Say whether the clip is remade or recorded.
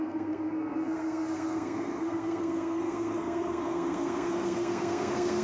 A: remade